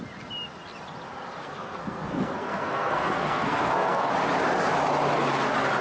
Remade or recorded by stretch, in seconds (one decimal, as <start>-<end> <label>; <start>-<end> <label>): 0.0-1.4 recorded; 1.4-4.1 remade; 4.1-5.8 recorded